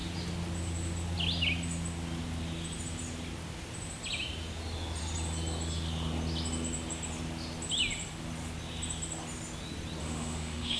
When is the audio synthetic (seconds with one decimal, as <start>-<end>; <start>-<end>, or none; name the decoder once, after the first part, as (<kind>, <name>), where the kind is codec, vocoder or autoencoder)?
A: 10.0-10.8 (autoencoder, DAC-VAE)